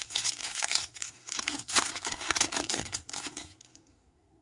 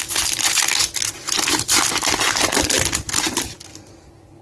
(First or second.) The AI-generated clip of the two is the first